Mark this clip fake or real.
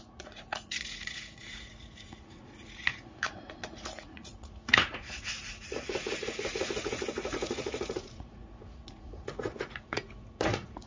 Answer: fake